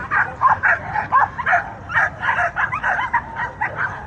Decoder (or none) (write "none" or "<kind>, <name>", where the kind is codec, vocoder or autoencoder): vocoder, BigVGAN v2